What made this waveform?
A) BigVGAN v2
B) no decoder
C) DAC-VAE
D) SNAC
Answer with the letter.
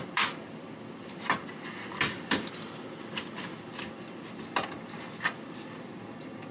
B